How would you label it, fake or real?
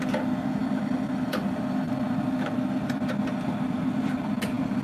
real